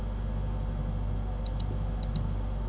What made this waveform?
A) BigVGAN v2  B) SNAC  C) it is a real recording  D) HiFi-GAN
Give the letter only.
C